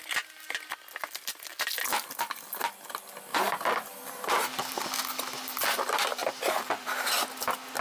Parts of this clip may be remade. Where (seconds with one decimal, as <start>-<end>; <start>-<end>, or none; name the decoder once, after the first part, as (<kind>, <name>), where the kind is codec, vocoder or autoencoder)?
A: 3.3-4.9 (vocoder, BigVGAN v2); 6.1-7.1